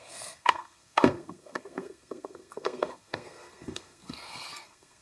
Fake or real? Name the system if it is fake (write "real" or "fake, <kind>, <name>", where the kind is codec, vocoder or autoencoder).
fake, codec, SNAC